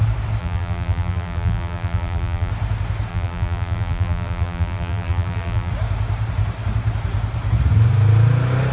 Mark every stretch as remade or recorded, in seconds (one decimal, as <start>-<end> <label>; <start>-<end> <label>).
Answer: 0.0-0.4 recorded; 0.4-2.5 remade; 2.5-3.1 recorded; 3.1-5.7 remade; 5.7-8.7 recorded